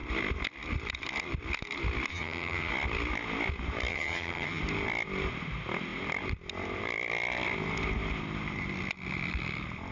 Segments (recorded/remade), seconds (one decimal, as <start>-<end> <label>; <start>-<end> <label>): 0.0-2.1 recorded; 2.1-2.7 remade; 2.7-3.9 recorded; 3.9-4.6 remade; 4.6-9.9 recorded